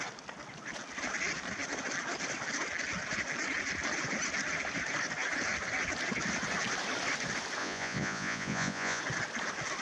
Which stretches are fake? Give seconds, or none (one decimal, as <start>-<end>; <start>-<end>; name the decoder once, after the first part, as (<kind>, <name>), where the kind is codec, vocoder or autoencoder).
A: 7.6-9.0 (vocoder, Vocos)